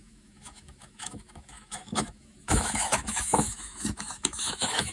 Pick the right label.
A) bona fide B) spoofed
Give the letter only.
B